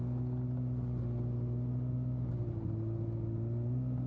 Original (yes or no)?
yes